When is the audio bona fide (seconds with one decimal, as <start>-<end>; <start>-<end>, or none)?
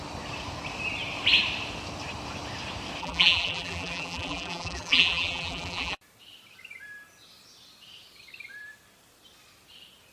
0.0-3.0; 6.0-10.1